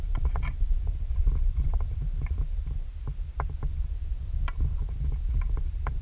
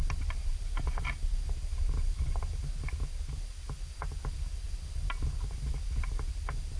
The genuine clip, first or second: second